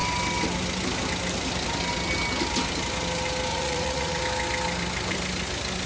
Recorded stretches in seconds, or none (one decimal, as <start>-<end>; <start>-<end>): 0.0-3.5; 4.2-5.9